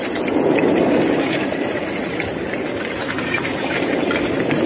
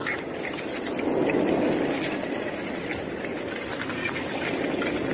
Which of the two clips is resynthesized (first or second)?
first